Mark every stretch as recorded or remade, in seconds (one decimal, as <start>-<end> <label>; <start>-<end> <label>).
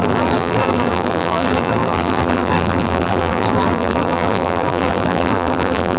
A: 0.0-6.0 remade